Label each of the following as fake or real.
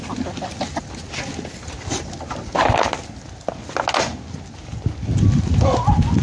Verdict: real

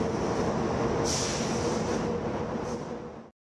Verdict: real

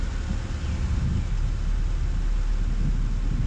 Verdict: real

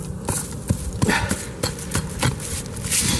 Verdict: real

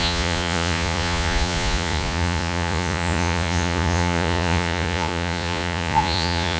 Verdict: fake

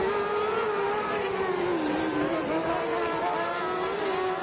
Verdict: real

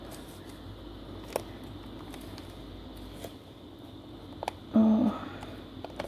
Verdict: real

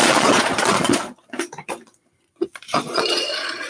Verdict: fake